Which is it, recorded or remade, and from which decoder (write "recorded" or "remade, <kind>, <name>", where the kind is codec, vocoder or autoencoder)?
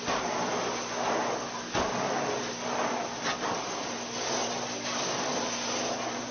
recorded